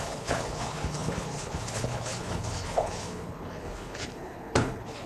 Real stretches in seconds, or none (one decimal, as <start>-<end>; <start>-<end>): none